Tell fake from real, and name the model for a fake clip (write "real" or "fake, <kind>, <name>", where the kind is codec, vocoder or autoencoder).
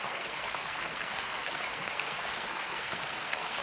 fake, codec, SNAC